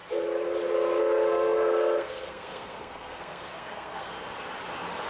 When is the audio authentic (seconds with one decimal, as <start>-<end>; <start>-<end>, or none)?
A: 0.0-1.0; 4.1-5.1